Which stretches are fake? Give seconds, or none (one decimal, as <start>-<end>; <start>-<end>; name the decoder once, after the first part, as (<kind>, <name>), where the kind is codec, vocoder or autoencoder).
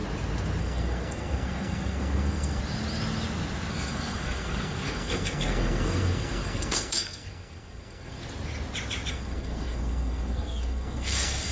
0.6-2.6 (codec, SNAC); 3.7-8.2; 9.1-11.5